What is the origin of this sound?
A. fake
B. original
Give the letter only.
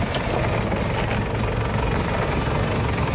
B